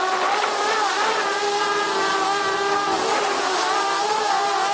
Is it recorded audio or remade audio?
recorded